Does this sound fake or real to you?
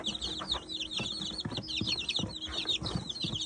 real